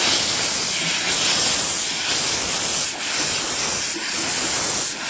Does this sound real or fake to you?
real